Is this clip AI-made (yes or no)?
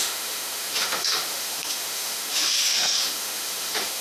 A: yes